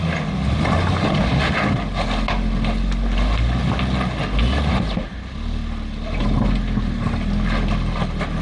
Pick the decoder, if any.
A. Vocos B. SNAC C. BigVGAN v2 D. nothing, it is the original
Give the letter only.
D